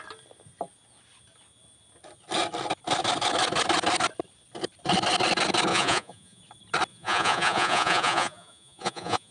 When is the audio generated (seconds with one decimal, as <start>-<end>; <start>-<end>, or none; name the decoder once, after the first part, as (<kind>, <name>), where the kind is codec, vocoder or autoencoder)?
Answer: 5.7-6.4 (vocoder, Vocos); 6.9-9.3